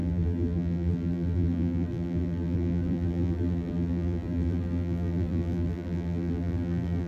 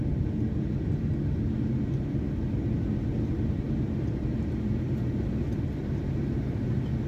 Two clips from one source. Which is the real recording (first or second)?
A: second